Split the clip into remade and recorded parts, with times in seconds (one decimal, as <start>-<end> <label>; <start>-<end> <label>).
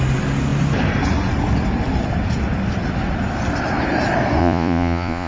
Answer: 0.0-4.4 recorded; 4.4-5.3 remade